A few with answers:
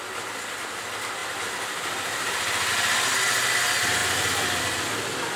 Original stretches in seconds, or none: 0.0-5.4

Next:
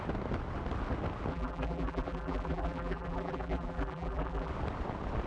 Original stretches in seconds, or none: 0.0-1.3; 4.5-5.3

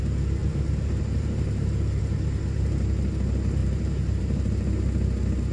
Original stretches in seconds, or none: 0.0-0.4; 2.0-3.6; 4.7-5.5

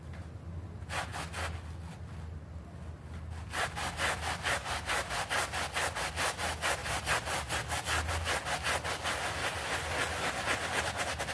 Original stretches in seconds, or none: 0.0-3.8; 5.3-11.3

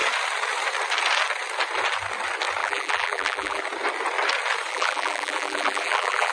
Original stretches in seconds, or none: 0.0-2.6; 3.6-4.7

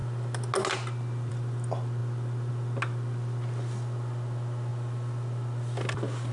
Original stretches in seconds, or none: 0.0-6.3

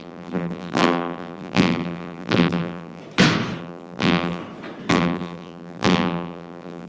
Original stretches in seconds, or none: 3.0-3.6; 4.4-4.9